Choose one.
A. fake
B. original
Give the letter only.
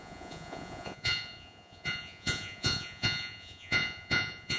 A